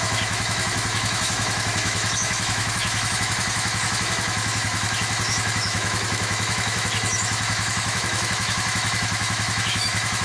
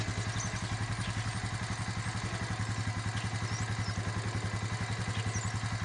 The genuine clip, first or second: second